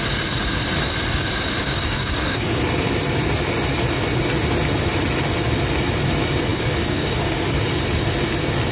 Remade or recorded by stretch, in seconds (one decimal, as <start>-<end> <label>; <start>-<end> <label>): 0.0-1.6 recorded; 1.6-2.6 remade; 2.6-6.5 recorded; 6.5-7.6 remade; 7.6-8.7 recorded